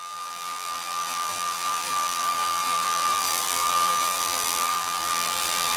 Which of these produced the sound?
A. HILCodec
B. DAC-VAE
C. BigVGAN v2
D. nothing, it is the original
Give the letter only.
C